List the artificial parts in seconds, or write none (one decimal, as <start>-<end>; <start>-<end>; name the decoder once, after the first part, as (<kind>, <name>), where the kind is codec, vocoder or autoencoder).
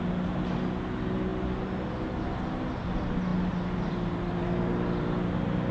none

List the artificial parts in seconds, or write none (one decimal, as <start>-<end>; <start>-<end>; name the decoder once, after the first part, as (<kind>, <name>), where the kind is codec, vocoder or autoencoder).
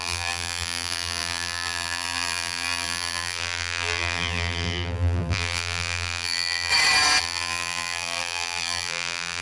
0.0-6.7 (vocoder, BigVGAN v2); 7.2-9.4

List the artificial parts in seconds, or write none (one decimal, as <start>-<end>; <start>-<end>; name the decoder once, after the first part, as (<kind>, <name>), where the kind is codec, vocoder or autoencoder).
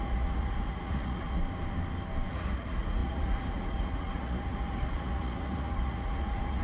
0.0-1.4 (vocoder, Vocos); 2.3-6.6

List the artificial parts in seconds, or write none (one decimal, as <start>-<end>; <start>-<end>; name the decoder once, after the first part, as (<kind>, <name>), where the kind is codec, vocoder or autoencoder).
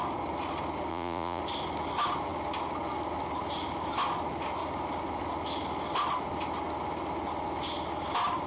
0.9-1.4 (vocoder, Vocos)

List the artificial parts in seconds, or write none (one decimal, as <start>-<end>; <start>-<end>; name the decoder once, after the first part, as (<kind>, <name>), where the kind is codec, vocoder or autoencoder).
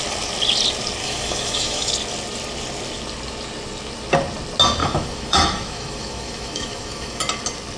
1.0-1.9 (autoencoder, DAC-VAE); 4.8-7.2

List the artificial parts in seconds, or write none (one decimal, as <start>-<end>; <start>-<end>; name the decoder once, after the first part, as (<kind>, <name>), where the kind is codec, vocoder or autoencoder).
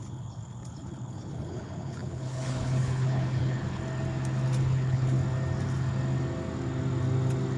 0.0-3.8 (codec, HILCodec); 4.6-5.2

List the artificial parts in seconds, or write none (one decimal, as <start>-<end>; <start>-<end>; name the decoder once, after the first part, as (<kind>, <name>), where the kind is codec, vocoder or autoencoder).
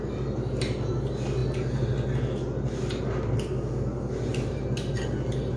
4.3-4.9 (vocoder, BigVGAN v2)